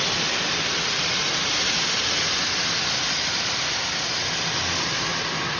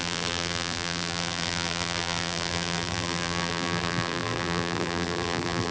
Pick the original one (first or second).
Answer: first